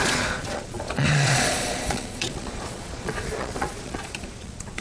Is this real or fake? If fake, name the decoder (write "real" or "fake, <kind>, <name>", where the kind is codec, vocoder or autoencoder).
fake, vocoder, Vocos